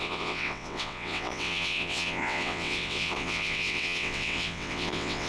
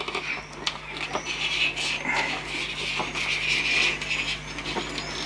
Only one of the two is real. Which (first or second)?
second